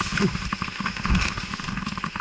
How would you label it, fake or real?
fake